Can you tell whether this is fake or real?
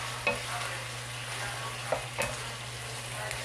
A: real